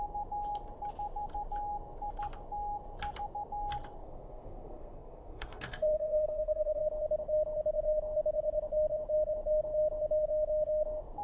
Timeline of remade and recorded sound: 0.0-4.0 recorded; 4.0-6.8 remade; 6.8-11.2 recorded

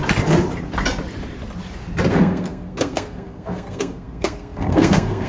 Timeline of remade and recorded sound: 0.0-2.1 recorded; 2.1-5.3 remade